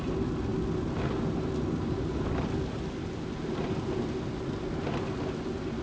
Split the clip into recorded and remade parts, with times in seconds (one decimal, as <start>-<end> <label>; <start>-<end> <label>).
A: 0.0-5.8 recorded